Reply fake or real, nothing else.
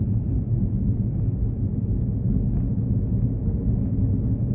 real